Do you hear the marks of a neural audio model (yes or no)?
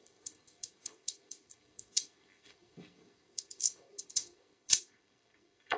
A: yes